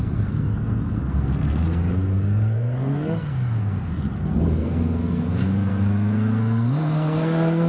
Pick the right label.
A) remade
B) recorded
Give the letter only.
A